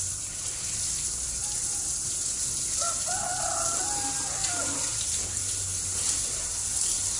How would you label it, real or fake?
real